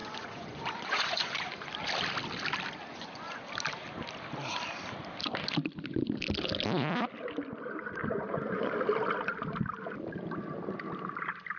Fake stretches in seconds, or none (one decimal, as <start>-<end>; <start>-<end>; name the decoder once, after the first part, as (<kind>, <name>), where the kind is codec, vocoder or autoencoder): 0.0-1.7 (vocoder, Vocos); 2.9-3.4; 8.0-8.7